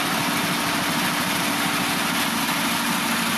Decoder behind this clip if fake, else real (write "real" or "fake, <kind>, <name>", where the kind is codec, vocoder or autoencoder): real